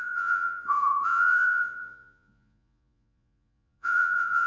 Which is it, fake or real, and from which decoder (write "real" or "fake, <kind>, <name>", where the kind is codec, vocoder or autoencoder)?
fake, vocoder, Vocos